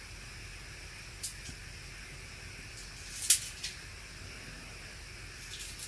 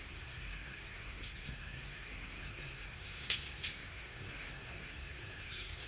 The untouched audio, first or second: first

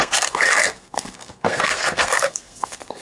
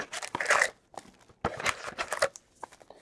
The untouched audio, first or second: second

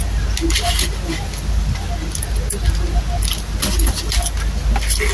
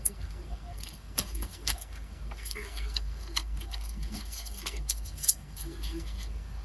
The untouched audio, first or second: first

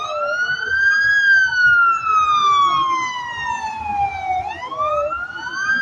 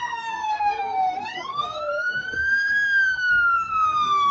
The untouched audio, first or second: first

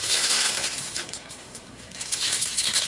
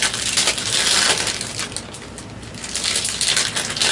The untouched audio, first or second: second